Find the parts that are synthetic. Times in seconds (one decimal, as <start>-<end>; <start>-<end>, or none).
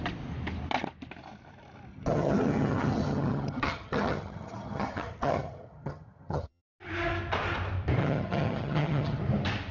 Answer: 1.9-6.6; 8.0-9.2